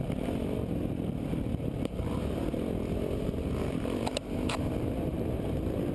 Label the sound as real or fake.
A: fake